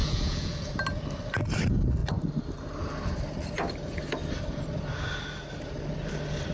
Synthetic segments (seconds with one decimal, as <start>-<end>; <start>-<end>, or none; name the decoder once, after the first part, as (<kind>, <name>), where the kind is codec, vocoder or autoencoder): 0.0-0.7 (vocoder, Vocos)